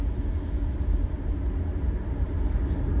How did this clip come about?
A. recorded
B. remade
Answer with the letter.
A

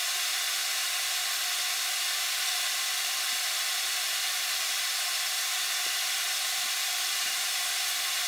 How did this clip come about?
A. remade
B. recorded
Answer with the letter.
B